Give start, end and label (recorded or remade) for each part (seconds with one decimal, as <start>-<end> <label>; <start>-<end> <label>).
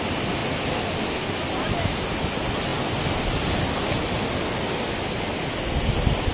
0.0-6.3 recorded